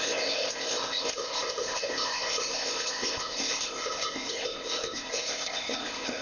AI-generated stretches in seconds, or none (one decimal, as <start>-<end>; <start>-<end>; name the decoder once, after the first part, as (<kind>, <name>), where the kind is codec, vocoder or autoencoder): 0.0-6.2 (codec, ZipCodec)